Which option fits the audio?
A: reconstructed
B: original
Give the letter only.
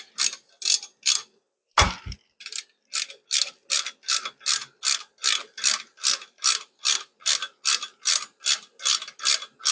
B